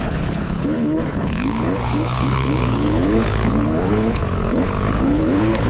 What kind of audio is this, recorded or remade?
remade